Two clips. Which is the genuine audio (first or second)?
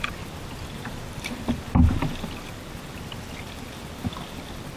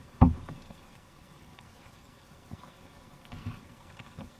first